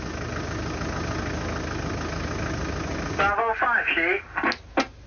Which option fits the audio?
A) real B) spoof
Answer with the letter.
A